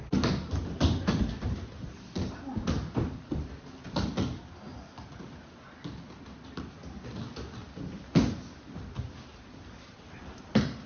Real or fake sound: real